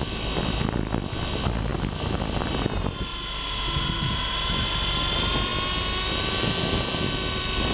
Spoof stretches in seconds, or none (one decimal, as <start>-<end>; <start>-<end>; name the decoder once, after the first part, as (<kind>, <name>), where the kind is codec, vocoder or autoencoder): 1.7-2.2 (vocoder, BigVGAN v2)